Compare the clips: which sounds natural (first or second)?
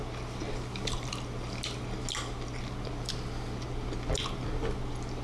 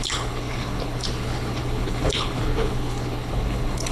first